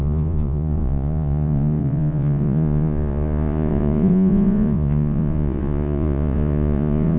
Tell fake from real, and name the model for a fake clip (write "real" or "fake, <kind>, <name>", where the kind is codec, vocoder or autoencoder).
fake, vocoder, Vocos